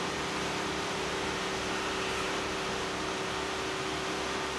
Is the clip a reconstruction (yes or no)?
no